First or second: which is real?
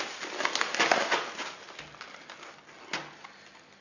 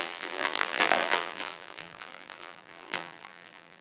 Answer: first